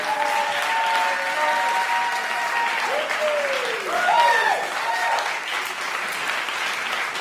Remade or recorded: recorded